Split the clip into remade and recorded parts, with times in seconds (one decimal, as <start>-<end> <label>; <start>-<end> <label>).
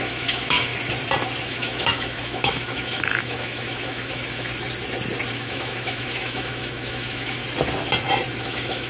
0.0-0.7 remade; 0.7-1.4 recorded; 1.4-4.5 remade; 4.5-5.3 recorded; 5.3-7.4 remade; 7.4-8.4 recorded; 8.4-8.9 remade